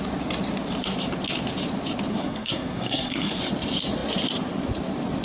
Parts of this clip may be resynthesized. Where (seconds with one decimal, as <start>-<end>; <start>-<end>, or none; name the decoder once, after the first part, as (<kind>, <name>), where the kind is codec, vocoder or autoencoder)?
2.1-3.4 (codec, SNAC)